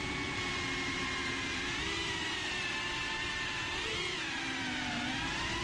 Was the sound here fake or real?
fake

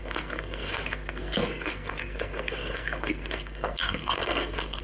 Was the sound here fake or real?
fake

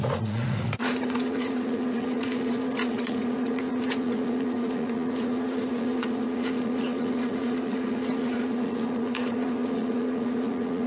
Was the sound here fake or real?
fake